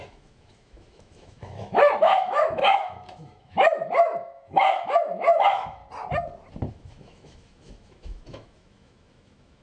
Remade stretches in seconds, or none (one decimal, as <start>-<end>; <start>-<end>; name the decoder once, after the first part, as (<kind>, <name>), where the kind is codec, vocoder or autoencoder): 0.0-5.8 (autoencoder, DAC-VAE); 6.7-9.6